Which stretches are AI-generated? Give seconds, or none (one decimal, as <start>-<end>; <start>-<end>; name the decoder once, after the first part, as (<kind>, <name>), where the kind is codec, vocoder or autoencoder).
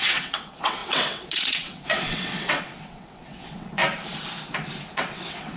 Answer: 0.0-3.8 (vocoder, WaveNeXt); 4.9-5.6